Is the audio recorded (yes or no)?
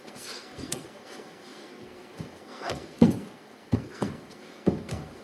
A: no